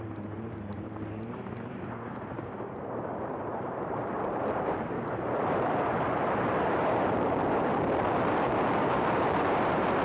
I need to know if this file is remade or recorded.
remade